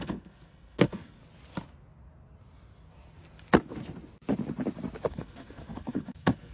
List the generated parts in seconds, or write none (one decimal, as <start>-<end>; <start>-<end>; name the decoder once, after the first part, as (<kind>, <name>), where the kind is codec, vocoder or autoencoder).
0.0-1.2 (codec, SNAC); 5.1-6.5